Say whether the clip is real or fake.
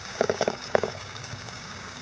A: fake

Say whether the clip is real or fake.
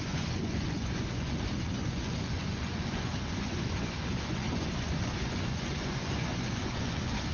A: fake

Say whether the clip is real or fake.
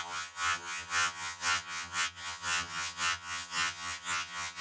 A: fake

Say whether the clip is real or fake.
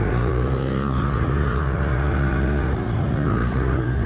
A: fake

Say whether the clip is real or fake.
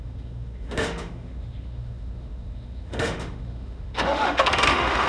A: fake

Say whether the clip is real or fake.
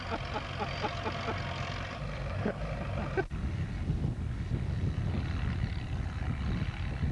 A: real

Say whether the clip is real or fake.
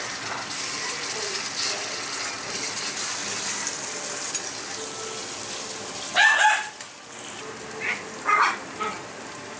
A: real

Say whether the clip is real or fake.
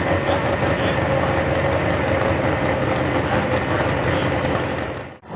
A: real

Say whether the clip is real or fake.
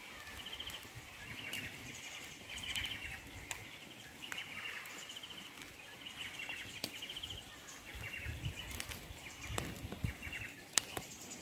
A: real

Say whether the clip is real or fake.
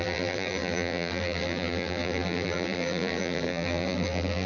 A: fake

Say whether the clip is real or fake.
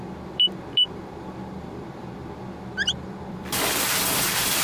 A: fake